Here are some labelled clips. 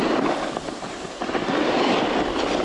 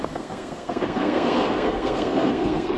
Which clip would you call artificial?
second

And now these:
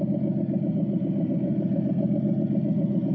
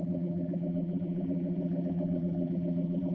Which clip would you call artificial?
second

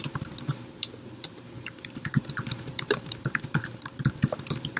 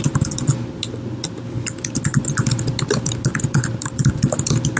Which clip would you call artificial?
first